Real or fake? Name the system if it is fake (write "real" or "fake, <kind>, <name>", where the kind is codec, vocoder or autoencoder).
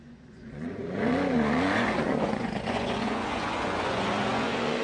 fake, vocoder, Vocos